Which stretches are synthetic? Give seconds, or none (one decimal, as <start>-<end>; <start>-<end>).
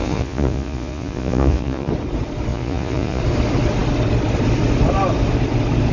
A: 0.0-1.9; 2.5-3.2